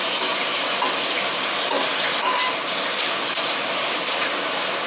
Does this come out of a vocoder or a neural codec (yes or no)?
no